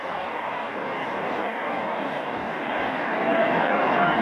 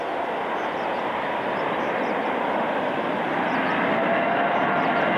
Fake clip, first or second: first